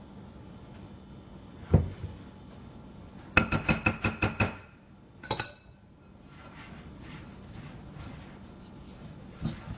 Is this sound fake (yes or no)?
no